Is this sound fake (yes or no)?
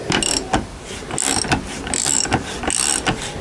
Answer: no